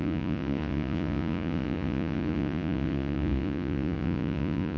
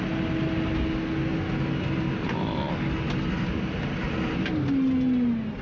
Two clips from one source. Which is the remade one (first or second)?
first